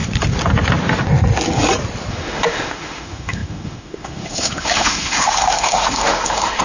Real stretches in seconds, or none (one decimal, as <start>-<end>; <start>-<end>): 0.0-2.1